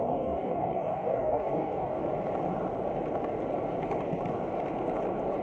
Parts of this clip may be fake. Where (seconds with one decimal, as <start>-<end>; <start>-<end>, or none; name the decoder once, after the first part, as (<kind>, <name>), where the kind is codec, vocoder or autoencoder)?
0.0-2.0 (codec, DAC)